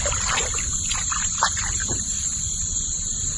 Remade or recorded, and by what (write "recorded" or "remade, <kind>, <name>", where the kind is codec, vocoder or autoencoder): remade, vocoder, BigVGAN v2